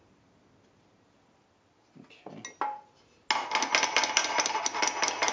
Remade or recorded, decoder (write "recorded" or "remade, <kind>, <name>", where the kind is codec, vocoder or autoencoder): recorded